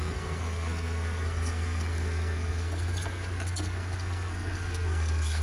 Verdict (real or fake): fake